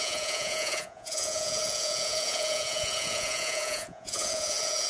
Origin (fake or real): fake